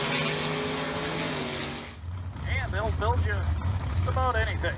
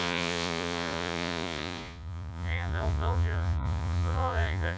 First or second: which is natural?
first